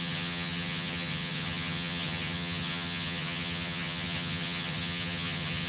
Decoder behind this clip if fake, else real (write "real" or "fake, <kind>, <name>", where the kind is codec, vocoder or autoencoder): fake, vocoder, HiFi-GAN